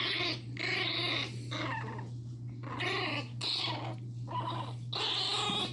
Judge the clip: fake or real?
real